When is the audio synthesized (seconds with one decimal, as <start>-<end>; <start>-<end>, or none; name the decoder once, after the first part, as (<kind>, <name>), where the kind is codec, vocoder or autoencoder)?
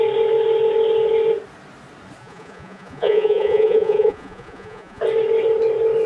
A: 2.2-5.0 (vocoder, Vocos)